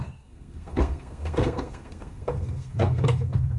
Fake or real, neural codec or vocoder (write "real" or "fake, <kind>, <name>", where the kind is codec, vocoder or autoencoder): fake, codec, SNAC